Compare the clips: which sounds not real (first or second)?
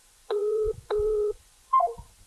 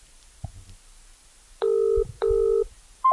first